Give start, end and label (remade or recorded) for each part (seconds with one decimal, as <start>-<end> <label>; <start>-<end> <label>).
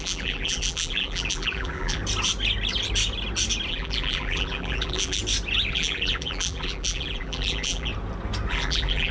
0.0-2.0 remade; 2.0-3.7 recorded; 3.7-5.2 remade; 5.2-5.7 recorded; 5.7-7.9 remade; 7.9-8.5 recorded; 8.5-9.1 remade